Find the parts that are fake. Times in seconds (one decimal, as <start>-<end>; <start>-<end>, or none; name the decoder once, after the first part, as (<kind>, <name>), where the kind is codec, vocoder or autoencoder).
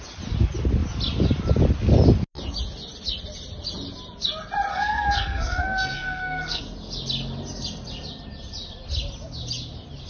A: 4.7-6.6 (codec, SNAC)